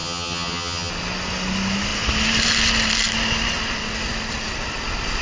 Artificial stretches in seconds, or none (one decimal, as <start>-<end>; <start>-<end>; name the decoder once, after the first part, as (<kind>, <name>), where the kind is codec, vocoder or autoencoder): 0.0-0.9 (vocoder, HiFi-GAN)